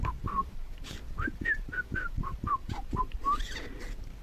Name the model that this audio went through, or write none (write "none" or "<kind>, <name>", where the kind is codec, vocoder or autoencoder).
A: vocoder, BigVGAN v2